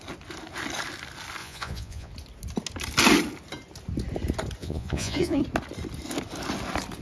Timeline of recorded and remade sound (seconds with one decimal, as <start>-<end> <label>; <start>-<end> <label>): 0.0-1.4 recorded; 1.4-2.1 remade; 2.1-4.6 recorded; 4.6-5.4 remade; 5.4-7.0 recorded